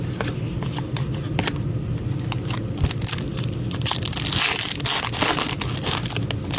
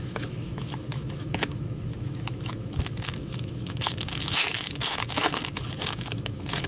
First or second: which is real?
first